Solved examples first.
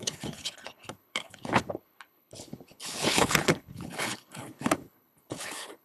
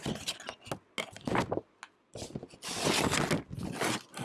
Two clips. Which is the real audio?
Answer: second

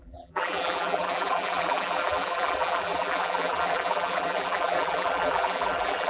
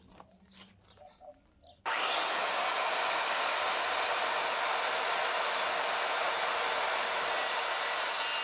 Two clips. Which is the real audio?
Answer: second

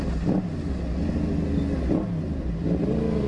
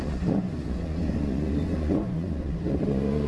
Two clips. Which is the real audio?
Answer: first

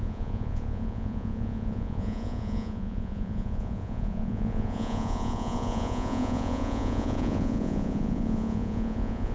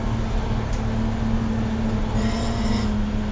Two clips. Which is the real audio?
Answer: second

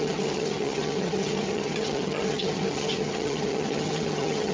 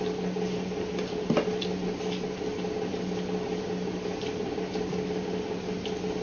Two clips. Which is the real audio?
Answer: second